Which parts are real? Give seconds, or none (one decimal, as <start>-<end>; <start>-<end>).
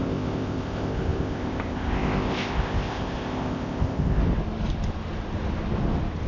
4.2-6.3